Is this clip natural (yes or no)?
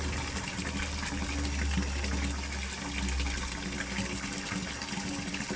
yes